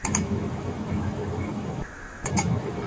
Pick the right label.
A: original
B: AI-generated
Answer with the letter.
B